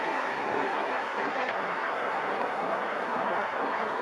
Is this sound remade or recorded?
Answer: remade